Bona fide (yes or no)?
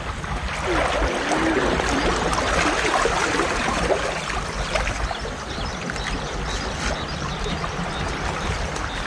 yes